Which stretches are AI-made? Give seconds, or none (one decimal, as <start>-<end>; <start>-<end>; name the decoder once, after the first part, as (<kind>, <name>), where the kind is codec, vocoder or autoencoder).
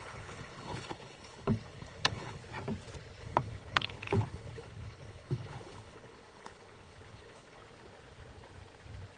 0.0-2.4 (codec, HILCodec); 3.2-7.6